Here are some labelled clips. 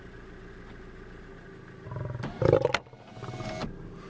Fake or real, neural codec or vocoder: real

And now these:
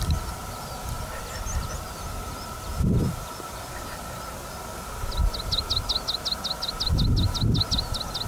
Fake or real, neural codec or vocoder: real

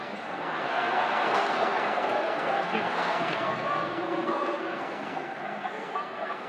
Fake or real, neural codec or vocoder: fake, codec, SNAC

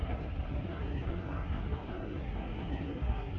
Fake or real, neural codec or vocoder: fake, codec, SNAC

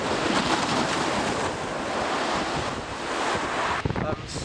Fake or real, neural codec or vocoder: real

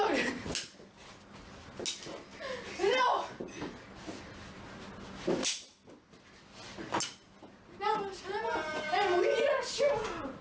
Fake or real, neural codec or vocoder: real